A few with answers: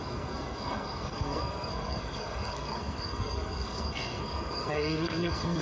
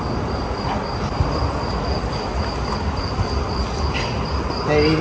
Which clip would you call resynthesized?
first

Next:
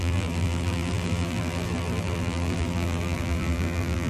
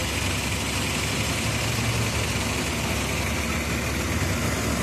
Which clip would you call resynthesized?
first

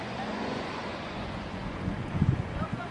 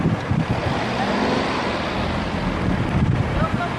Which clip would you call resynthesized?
first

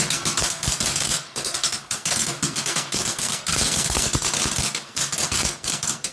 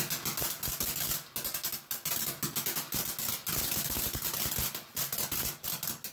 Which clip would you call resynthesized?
first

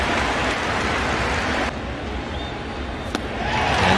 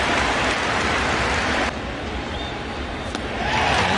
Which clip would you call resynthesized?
second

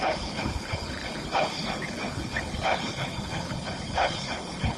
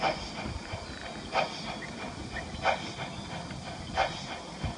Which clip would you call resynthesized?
first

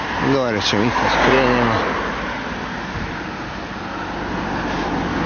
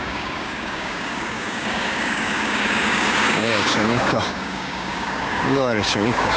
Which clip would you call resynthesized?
second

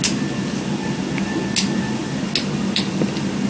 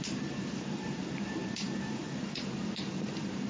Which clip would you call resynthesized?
second